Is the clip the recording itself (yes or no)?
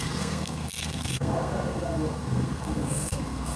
no